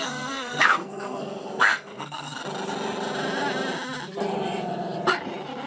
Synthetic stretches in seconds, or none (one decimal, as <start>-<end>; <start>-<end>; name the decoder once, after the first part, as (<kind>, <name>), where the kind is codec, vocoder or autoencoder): 0.0-2.4 (codec, SNAC)